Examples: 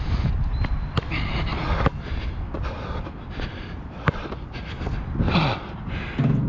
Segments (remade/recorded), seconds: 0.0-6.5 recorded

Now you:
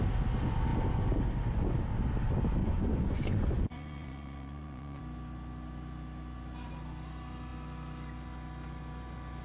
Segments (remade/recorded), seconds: 0.0-2.6 recorded; 2.6-5.0 remade; 5.0-9.4 recorded